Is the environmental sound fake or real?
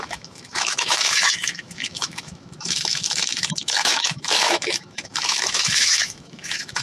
fake